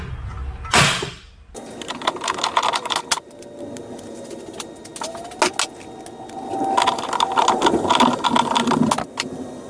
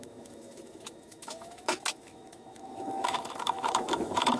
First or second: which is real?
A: first